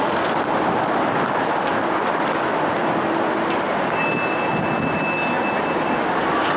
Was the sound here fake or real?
real